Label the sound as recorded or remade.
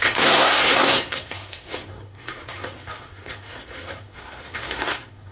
remade